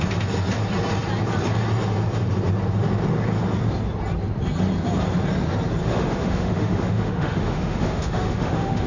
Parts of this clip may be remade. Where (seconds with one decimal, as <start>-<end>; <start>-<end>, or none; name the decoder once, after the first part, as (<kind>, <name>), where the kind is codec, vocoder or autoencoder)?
5.8-8.9 (autoencoder, DAC-VAE)